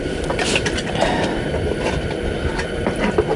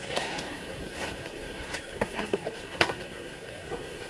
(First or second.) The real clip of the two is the first